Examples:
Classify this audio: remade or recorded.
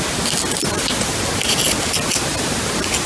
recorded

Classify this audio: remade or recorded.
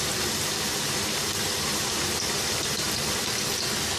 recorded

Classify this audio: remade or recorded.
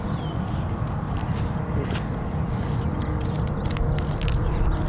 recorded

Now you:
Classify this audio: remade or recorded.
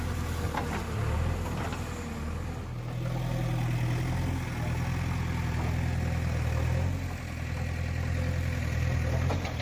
recorded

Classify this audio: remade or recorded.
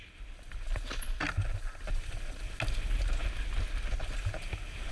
recorded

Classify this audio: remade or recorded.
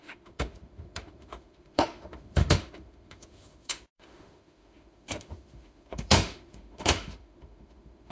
remade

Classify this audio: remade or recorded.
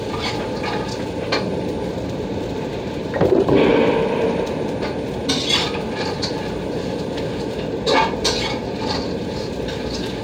recorded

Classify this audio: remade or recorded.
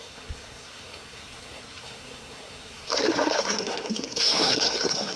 remade